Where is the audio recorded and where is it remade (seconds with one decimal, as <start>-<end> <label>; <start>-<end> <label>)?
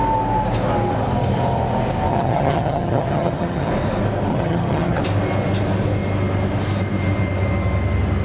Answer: 0.0-2.1 recorded; 2.1-3.7 remade; 3.7-4.3 recorded; 4.3-5.0 remade; 5.0-8.2 recorded